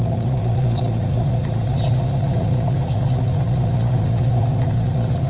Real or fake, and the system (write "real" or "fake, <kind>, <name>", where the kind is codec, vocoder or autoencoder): fake, vocoder, Vocos